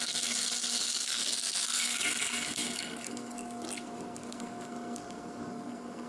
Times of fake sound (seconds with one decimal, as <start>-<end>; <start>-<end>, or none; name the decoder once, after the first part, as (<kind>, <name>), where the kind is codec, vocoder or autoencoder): 0.0-6.1 (codec, SNAC)